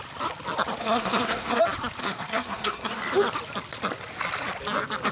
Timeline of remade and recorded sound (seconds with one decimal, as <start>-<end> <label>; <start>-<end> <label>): 0.0-0.8 recorded; 0.8-1.6 remade; 1.6-2.0 recorded; 2.0-3.0 remade; 3.0-5.1 recorded